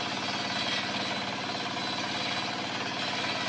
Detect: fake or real real